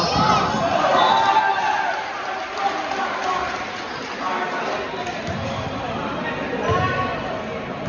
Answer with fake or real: real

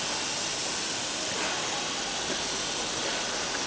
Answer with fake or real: real